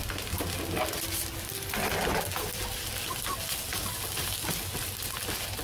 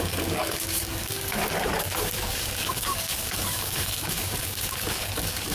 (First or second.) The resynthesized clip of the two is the second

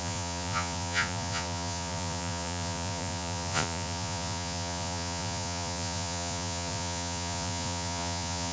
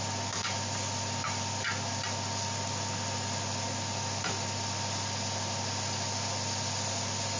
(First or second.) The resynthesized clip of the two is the first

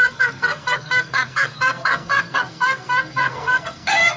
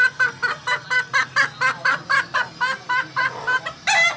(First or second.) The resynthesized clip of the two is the first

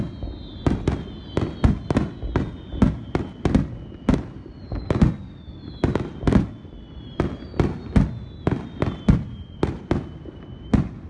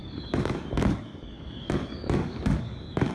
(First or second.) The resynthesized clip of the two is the second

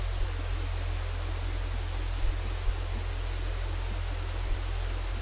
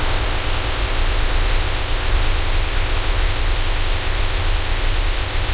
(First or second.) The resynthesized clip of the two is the second